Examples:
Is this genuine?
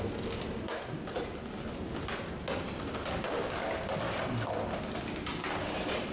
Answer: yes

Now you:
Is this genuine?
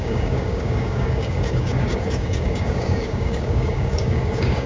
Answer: no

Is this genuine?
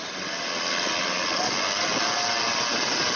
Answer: yes